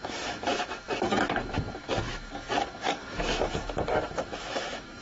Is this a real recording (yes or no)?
no